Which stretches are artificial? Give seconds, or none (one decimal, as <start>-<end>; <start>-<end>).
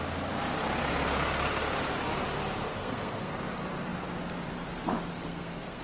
2.7-3.4; 5.3-5.8